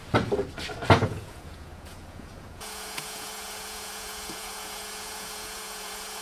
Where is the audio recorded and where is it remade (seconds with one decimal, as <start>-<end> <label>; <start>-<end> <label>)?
0.0-1.0 recorded; 1.0-6.2 remade

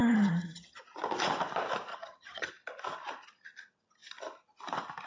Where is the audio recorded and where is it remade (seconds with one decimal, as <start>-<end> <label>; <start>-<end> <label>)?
0.0-0.8 remade; 0.8-1.9 recorded; 1.9-2.5 remade; 2.5-5.1 recorded

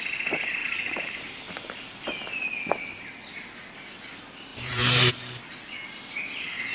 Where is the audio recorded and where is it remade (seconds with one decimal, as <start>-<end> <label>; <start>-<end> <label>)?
0.0-0.6 recorded; 0.6-1.2 remade; 1.2-4.5 recorded; 4.5-5.1 remade; 5.1-6.7 recorded

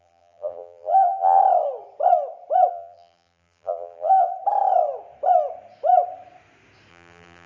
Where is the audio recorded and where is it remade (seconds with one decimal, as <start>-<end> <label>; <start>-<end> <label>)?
0.0-1.4 remade; 1.4-2.7 recorded; 2.7-4.3 remade; 4.3-6.9 recorded; 6.9-7.5 remade

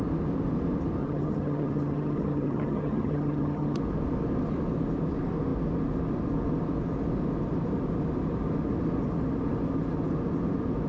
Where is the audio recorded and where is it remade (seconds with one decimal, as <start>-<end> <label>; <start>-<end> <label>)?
0.0-1.0 recorded; 1.0-3.8 remade; 3.8-10.9 recorded